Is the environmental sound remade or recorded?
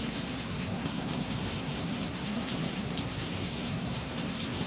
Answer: remade